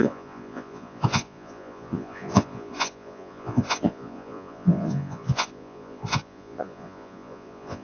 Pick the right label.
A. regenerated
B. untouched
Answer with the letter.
A